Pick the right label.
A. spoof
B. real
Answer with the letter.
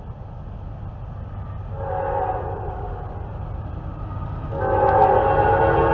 B